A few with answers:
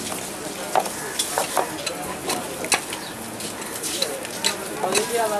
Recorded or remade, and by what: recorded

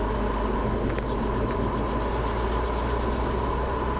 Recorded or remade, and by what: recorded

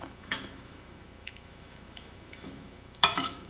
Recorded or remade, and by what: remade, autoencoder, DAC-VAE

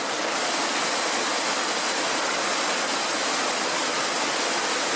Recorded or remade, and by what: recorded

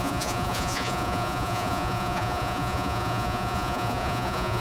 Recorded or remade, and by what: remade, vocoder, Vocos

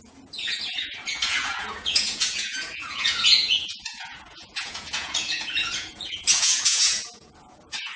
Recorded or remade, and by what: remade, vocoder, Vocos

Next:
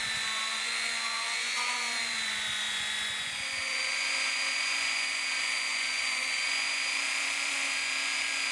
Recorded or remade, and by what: remade, vocoder, Vocos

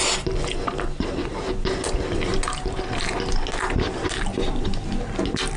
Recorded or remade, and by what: recorded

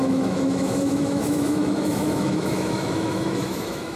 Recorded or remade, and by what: remade, autoencoder, DAC-VAE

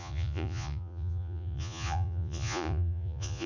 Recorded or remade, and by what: remade, vocoder, Vocos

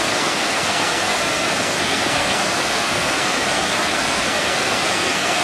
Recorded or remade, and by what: remade, codec, SNAC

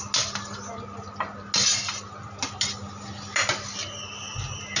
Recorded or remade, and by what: recorded